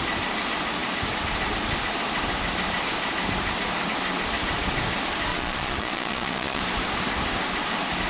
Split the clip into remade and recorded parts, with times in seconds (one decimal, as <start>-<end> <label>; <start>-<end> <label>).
0.0-5.3 recorded; 5.3-6.6 remade; 6.6-8.1 recorded

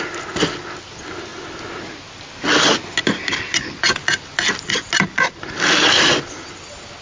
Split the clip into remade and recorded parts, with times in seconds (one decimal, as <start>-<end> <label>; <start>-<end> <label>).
0.0-7.0 recorded

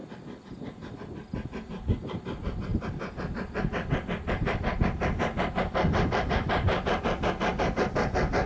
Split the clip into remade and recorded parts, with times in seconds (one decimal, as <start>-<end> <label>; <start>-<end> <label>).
0.0-8.5 recorded

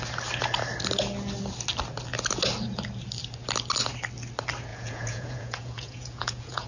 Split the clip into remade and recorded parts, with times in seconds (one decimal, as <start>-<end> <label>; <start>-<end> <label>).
0.0-4.7 recorded; 4.7-6.7 remade

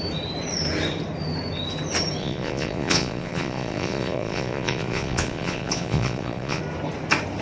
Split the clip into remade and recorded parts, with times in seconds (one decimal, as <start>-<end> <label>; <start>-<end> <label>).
0.0-2.2 recorded; 2.2-6.6 remade; 6.6-7.4 recorded

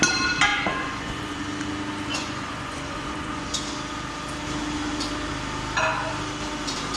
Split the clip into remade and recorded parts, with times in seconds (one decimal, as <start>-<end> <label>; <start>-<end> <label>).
0.0-0.5 recorded; 0.5-1.4 remade; 1.4-2.1 recorded; 2.1-3.5 remade; 3.5-7.0 recorded

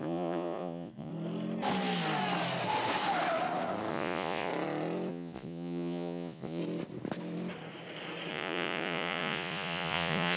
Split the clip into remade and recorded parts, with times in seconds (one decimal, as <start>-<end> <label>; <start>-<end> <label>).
0.0-1.1 remade; 1.1-3.9 recorded; 3.9-4.5 remade; 4.5-5.1 recorded; 5.1-6.6 remade; 6.6-8.3 recorded; 8.3-10.4 remade

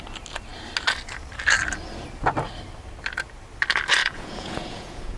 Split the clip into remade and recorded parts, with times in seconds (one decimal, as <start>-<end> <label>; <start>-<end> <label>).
0.0-4.0 recorded; 4.0-5.2 remade